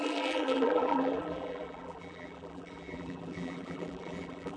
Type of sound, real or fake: fake